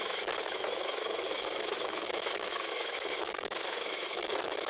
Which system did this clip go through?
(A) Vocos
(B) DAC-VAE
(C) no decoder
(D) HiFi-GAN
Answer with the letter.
B